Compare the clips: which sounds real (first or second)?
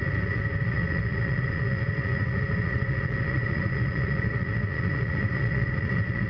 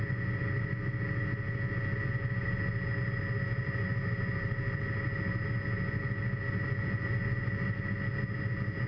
second